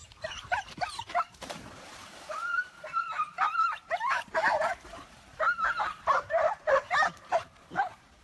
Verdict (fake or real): fake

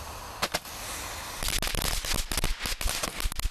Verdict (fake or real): real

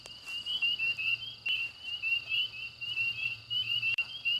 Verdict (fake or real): fake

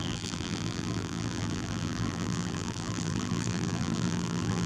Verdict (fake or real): fake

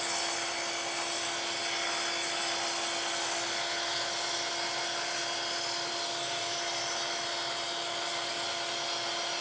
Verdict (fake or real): real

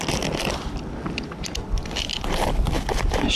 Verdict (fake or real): real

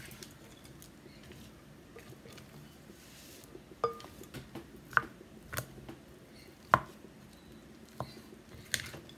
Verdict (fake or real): real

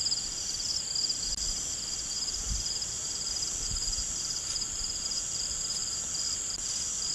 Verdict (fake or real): fake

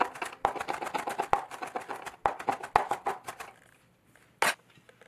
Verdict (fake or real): real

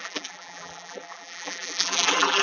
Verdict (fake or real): fake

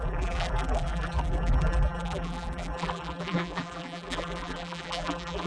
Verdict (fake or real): fake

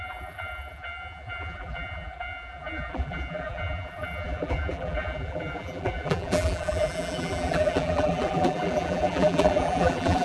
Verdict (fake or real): fake